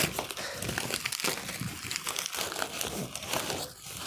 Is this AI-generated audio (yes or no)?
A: yes